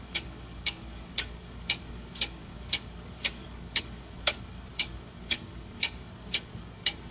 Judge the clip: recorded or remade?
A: remade